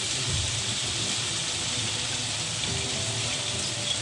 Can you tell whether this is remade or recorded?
recorded